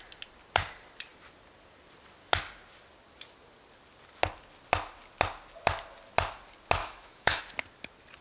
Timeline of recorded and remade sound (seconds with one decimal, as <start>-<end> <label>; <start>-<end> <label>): 0.0-6.8 recorded; 6.8-7.4 remade; 7.4-8.2 recorded